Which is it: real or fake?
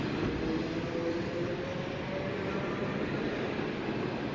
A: real